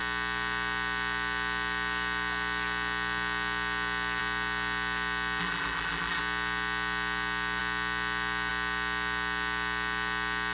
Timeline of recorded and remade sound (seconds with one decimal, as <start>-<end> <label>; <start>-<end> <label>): 0.0-5.4 recorded; 5.4-6.2 remade; 6.2-10.5 recorded